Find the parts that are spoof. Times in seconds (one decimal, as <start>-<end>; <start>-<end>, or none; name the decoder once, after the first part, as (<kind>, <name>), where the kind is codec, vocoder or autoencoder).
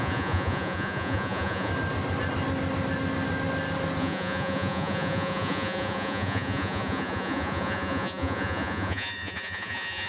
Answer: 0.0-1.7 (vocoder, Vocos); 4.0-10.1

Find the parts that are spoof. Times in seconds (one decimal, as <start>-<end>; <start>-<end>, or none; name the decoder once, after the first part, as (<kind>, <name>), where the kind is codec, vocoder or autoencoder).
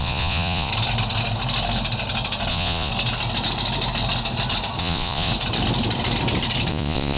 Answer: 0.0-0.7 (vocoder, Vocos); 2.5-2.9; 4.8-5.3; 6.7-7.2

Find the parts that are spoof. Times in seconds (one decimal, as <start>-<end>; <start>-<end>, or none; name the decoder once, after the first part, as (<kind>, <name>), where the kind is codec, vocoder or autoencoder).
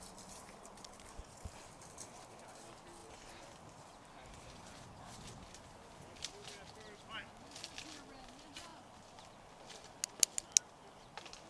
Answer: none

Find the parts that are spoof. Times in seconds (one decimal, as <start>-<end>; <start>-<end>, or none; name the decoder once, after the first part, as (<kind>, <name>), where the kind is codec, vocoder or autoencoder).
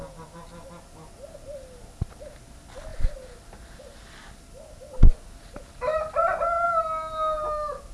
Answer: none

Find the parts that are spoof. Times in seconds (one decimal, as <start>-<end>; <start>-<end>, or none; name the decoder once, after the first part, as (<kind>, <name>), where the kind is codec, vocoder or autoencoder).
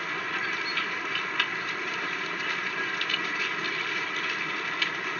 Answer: none